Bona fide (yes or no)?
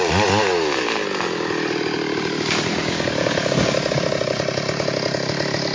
yes